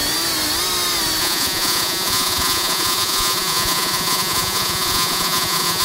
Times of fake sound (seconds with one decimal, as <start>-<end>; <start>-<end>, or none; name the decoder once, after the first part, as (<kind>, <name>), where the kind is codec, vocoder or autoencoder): 1.2-5.8 (vocoder, Vocos)